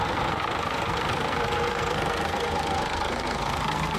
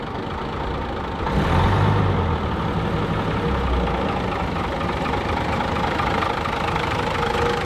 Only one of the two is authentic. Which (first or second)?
second